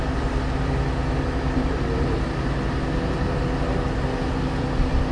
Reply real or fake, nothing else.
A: real